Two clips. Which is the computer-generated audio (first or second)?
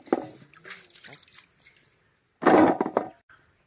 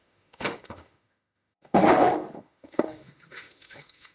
second